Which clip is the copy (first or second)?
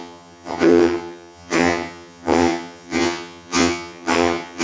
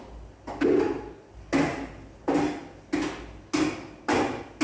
first